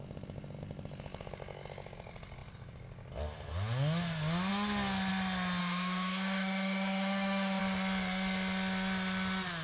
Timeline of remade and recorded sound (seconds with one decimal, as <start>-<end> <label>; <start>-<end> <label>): 0.0-5.6 recorded; 5.6-7.6 remade; 7.6-9.6 recorded